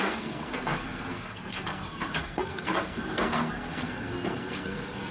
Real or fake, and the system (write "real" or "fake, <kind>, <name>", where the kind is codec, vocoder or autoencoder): fake, codec, SNAC